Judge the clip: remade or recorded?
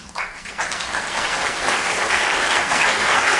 remade